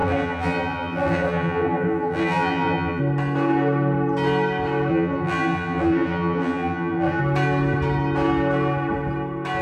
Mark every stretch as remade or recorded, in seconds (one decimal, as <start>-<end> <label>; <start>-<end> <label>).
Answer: 0.0-3.0 remade; 3.0-4.9 recorded; 4.9-7.2 remade; 7.2-9.6 recorded